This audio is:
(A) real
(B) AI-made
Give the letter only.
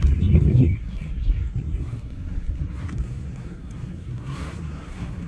B